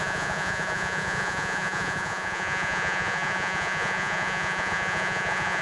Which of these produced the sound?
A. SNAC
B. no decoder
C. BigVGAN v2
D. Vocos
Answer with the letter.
D